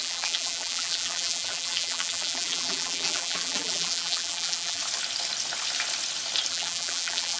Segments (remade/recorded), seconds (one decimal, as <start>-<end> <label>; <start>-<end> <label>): 0.0-4.8 remade; 4.8-6.5 recorded; 6.5-7.4 remade